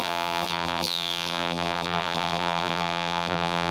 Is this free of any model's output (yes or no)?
no